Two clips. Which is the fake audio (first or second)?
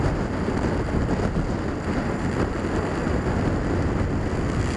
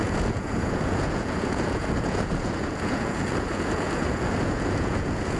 second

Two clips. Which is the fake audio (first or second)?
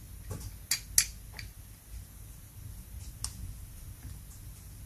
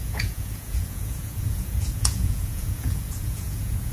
second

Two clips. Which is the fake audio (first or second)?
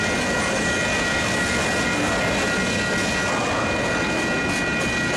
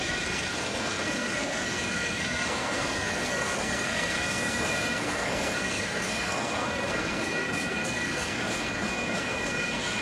second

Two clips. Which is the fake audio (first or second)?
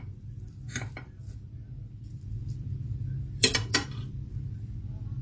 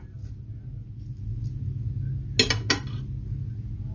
first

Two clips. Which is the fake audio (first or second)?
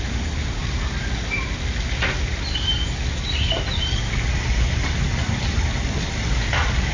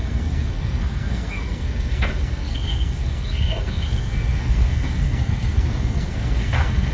second